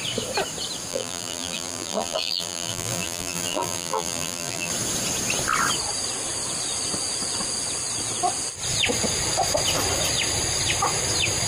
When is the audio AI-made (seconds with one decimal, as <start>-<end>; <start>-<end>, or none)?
0.9-4.7